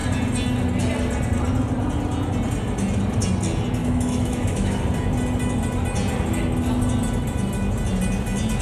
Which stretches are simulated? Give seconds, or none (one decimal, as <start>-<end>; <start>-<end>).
3.8-4.8